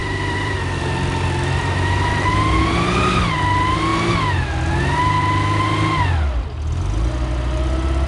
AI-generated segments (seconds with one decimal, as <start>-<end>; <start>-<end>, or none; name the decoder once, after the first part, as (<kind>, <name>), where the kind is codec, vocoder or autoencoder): 0.0-2.1 (vocoder, BigVGAN v2)